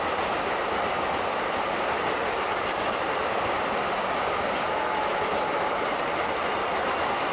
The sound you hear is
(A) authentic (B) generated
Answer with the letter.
B